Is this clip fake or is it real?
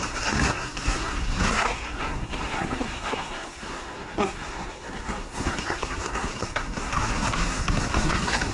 fake